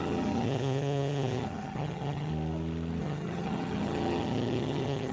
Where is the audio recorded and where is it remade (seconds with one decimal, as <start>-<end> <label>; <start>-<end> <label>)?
0.0-2.3 remade; 2.3-3.0 recorded; 3.0-5.1 remade